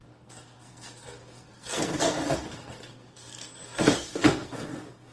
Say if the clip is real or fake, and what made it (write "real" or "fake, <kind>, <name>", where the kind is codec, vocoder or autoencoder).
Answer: fake, codec, SNAC